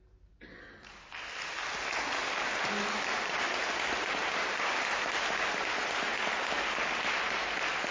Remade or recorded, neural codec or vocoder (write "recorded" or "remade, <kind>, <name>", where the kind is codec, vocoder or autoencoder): recorded